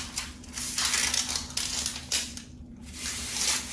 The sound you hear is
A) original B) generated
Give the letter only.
A